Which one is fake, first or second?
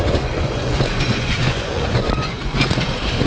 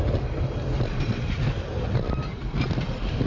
first